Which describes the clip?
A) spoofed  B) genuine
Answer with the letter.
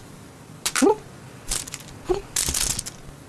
B